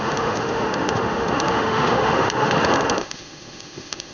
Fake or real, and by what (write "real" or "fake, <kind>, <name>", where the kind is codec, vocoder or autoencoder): fake, autoencoder, DAC-VAE